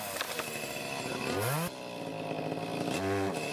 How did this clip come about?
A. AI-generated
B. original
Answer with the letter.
B